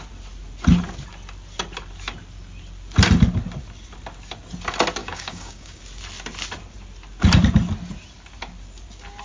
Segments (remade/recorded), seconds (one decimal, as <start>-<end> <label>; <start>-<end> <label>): 0.0-5.0 recorded; 5.0-5.8 remade; 5.8-9.2 recorded